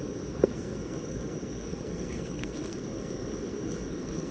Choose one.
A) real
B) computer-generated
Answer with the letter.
B